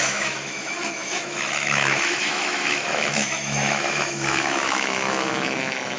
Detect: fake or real fake